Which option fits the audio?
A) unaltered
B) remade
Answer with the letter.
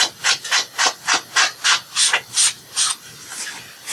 A